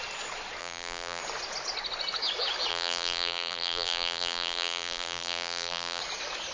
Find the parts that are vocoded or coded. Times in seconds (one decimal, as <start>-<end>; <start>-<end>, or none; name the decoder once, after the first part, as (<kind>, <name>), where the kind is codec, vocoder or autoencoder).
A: 0.6-1.2 (vocoder, BigVGAN v2); 2.7-6.0